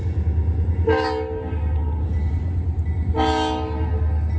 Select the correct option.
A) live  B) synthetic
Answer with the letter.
A